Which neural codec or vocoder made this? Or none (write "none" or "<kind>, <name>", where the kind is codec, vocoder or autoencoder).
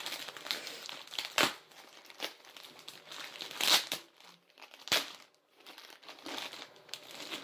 none